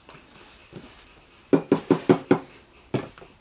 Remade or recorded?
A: recorded